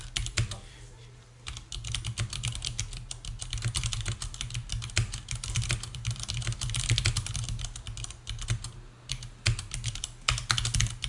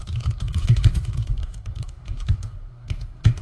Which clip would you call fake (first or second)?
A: second